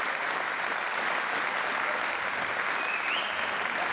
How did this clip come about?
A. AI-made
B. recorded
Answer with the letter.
B